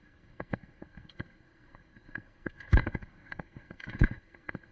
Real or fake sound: fake